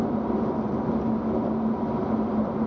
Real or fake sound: real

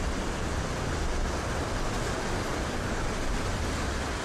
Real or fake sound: real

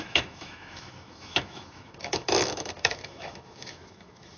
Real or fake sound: fake